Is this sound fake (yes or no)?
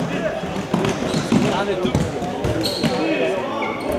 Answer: no